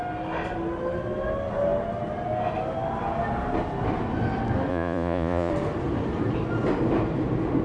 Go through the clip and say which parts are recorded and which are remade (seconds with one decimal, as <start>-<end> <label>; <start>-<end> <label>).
0.0-4.7 recorded; 4.7-5.5 remade; 5.5-7.6 recorded

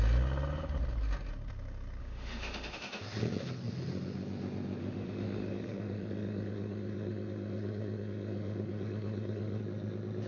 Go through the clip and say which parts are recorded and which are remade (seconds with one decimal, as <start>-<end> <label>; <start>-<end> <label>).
0.0-2.0 recorded; 2.0-3.0 remade; 3.0-4.8 recorded; 4.8-9.6 remade; 9.6-10.3 recorded

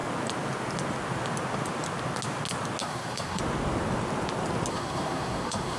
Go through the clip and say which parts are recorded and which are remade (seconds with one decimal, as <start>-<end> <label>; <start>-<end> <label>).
0.0-2.8 recorded; 2.8-3.4 remade; 3.4-4.7 recorded; 4.7-5.8 remade

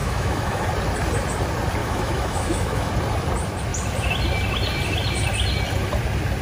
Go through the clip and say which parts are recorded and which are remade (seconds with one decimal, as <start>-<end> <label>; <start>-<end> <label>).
0.0-0.7 remade; 0.7-1.8 recorded; 1.8-2.9 remade; 2.9-6.4 recorded

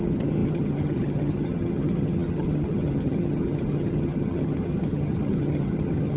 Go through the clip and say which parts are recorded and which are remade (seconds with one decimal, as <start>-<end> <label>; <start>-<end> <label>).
0.0-6.2 remade

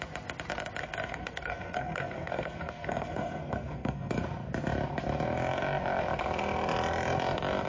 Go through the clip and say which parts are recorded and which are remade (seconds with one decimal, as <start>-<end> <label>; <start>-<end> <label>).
0.0-0.8 recorded; 0.8-4.2 remade; 4.2-7.7 recorded